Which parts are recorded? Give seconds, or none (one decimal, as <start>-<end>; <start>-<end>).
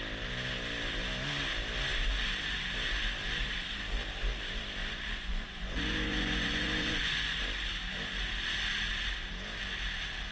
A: 0.0-4.8; 7.4-10.3